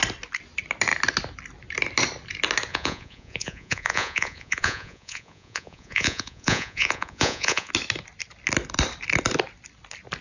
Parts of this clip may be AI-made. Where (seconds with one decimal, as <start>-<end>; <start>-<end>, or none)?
2.7-7.7